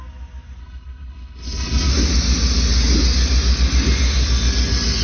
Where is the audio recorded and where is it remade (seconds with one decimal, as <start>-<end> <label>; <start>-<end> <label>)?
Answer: 0.0-0.6 recorded; 0.6-1.9 remade; 1.9-5.0 recorded